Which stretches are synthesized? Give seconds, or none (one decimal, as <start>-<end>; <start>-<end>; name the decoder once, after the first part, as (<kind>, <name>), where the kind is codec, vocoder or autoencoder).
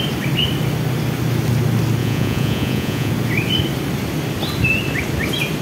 2.0-3.1 (vocoder, Vocos)